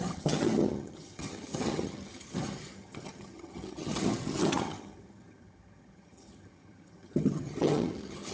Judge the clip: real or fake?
fake